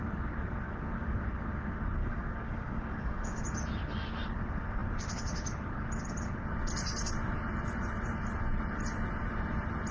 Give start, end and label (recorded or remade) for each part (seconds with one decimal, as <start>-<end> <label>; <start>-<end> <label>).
0.0-2.0 recorded; 2.0-3.4 remade; 3.4-9.9 recorded